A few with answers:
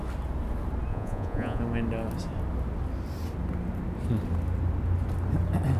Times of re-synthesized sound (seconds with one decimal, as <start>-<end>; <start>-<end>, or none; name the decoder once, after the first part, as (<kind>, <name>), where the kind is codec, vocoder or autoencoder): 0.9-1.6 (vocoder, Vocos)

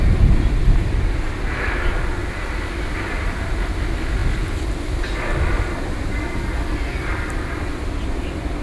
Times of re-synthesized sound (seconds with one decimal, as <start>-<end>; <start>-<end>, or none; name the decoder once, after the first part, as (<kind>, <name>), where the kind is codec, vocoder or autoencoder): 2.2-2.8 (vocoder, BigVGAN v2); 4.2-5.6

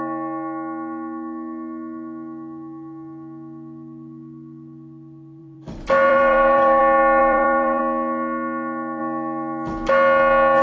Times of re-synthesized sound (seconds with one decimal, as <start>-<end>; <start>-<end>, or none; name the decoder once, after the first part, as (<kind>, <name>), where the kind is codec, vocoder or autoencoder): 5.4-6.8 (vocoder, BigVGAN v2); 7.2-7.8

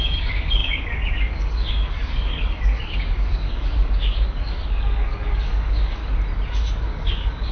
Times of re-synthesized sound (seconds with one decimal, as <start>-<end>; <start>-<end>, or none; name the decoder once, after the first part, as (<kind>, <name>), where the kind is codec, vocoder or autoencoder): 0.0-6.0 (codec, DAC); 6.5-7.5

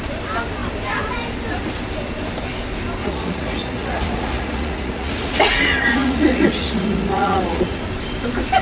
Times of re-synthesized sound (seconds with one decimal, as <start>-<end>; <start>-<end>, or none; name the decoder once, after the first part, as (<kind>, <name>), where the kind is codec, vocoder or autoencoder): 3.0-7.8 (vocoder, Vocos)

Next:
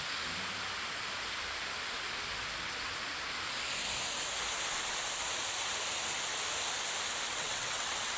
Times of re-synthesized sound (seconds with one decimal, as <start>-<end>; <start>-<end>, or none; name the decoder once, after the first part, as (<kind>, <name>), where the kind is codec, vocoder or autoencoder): 7.3-8.2 (vocoder, WaveNeXt)

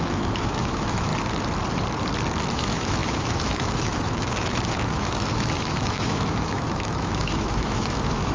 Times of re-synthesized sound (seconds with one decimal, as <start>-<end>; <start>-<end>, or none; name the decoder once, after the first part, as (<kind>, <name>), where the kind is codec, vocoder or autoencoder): 0.0-1.1 (autoencoder, DAC-VAE); 2.5-8.3

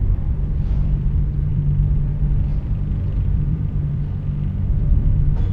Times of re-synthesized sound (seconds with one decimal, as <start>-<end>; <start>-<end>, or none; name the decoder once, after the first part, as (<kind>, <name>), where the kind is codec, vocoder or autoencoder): 0.0-1.1 (vocoder, BigVGAN v2); 1.5-2.1; 2.5-4.0